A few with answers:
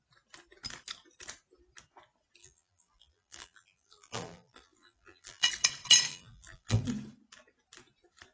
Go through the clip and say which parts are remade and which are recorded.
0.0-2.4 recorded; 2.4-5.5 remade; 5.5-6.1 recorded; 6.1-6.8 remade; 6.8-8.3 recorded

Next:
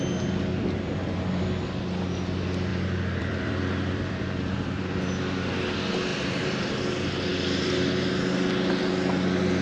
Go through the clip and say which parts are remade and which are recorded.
0.0-0.5 recorded; 0.5-1.4 remade; 1.4-2.7 recorded; 2.7-5.0 remade; 5.0-6.1 recorded; 6.1-6.7 remade; 6.7-9.6 recorded

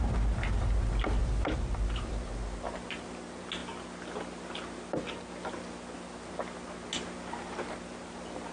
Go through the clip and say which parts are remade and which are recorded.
0.0-1.2 recorded; 1.2-2.1 remade; 2.1-8.5 recorded

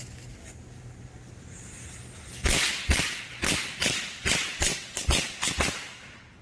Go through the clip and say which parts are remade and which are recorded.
0.0-2.6 recorded; 2.6-3.2 remade; 3.2-6.4 recorded